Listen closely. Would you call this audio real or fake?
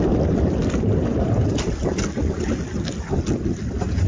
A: real